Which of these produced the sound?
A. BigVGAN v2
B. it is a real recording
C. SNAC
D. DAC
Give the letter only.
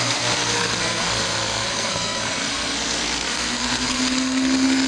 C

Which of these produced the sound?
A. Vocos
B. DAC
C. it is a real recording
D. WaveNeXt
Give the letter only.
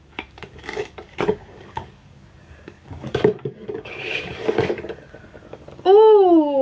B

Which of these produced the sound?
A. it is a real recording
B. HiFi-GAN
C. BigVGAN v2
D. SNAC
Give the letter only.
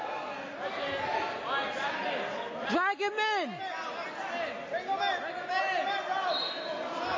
A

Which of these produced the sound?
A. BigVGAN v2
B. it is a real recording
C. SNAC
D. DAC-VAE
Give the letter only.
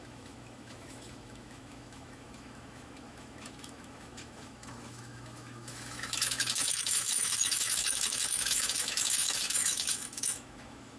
D